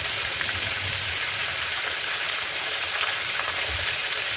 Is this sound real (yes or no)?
no